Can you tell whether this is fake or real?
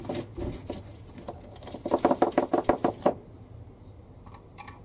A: real